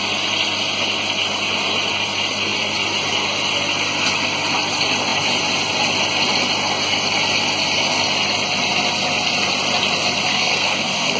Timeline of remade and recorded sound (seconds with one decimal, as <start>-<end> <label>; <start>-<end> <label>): 0.0-10.3 recorded; 10.3-11.2 remade